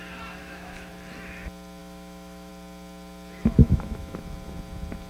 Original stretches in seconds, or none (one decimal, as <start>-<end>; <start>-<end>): 0.0-0.4; 0.9-1.8; 2.5-3.6; 4.2-5.1

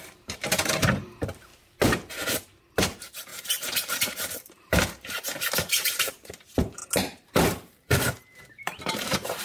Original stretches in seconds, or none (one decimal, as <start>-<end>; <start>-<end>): 1.5-2.8

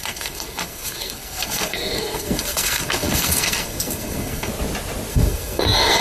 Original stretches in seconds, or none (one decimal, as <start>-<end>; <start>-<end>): 4.5-5.1

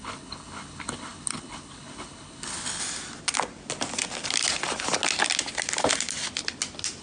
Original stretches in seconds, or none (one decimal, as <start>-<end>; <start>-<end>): 2.8-7.0

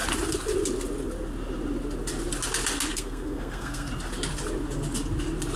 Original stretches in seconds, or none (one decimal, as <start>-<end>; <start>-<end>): 0.0-2.9; 3.9-5.6

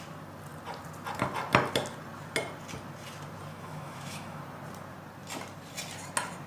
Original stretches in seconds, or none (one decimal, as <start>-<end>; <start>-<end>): 0.0-3.5; 4.4-6.5